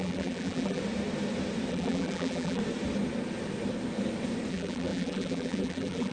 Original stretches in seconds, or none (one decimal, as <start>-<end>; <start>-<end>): 0.8-1.7; 2.6-4.5